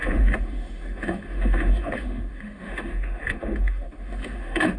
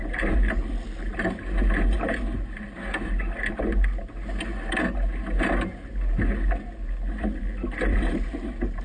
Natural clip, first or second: second